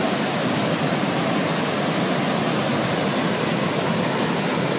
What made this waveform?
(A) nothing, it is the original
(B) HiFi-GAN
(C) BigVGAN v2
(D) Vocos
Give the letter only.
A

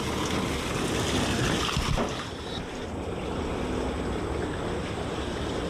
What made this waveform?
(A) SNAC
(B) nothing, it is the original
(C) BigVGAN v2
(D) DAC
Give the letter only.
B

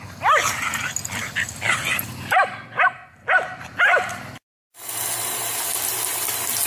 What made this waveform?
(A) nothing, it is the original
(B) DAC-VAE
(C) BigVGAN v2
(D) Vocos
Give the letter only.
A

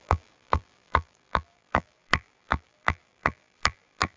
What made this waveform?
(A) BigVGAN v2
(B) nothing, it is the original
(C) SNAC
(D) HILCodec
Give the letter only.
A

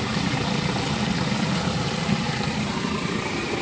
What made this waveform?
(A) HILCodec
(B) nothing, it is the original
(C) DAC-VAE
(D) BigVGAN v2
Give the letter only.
D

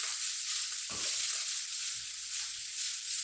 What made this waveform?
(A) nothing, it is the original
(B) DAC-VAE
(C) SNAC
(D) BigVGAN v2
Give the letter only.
A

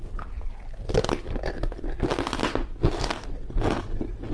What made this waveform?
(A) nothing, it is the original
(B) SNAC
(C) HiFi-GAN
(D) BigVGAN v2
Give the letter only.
A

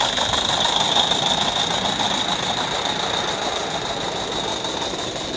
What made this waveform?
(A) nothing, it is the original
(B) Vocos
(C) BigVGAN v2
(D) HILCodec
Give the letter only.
A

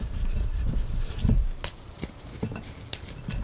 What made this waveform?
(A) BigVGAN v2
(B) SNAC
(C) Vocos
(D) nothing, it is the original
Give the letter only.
A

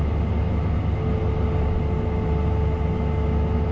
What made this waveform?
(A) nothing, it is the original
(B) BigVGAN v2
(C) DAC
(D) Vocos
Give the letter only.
A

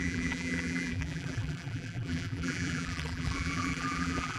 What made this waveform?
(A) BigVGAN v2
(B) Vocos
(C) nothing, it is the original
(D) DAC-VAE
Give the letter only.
A